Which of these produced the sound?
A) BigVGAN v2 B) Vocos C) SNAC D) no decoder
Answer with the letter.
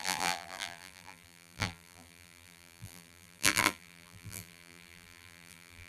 A